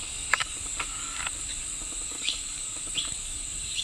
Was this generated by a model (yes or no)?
yes